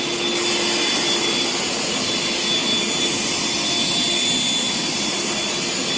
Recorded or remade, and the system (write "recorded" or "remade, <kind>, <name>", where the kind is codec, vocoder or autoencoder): recorded